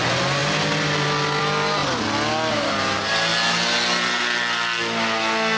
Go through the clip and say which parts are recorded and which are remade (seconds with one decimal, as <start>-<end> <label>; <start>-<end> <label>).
0.0-5.6 recorded